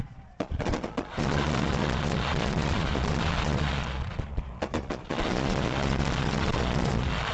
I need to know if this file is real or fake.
fake